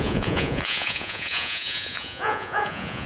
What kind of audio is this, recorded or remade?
remade